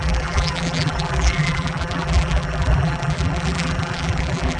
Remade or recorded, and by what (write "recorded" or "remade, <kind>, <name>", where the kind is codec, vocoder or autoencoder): remade, vocoder, BigVGAN v2